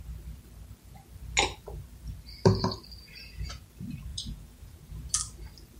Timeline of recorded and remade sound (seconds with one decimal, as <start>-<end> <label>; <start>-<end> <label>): 0.0-3.1 recorded; 3.1-3.6 remade; 3.6-4.1 recorded; 4.1-5.1 remade; 5.1-5.8 recorded